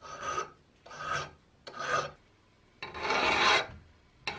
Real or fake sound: real